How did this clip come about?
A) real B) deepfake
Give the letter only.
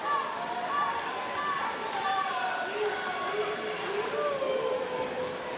B